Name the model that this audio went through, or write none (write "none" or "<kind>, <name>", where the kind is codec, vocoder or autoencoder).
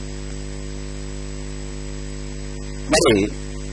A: none